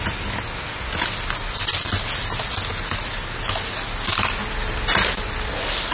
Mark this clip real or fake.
real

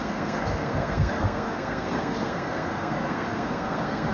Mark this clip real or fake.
fake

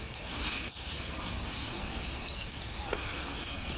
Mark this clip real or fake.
fake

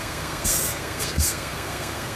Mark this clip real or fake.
fake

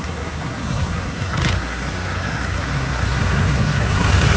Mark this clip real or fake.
fake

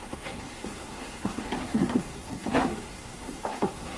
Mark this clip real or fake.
fake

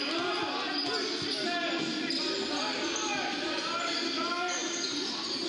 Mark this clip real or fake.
real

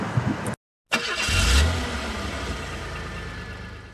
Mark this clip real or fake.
real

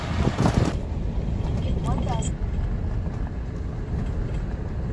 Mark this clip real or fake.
real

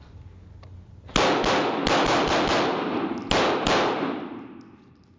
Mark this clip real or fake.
real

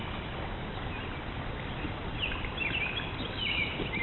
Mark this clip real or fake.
real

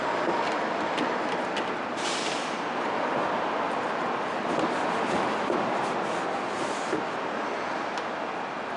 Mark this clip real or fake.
real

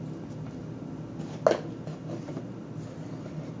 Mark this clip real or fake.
real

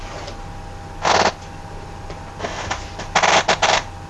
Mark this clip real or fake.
real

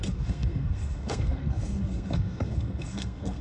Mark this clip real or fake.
fake